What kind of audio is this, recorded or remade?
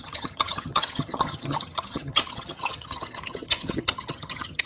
remade